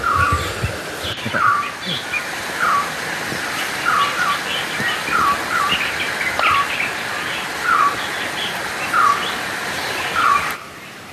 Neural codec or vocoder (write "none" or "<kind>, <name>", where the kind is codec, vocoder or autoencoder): none